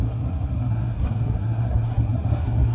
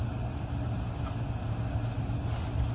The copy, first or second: first